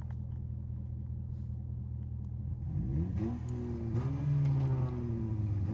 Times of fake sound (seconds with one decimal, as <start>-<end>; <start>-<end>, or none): none